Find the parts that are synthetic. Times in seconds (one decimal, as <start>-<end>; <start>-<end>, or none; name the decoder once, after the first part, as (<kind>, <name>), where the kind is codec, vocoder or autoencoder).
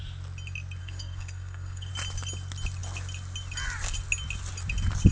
0.8-1.9 (codec, SNAC)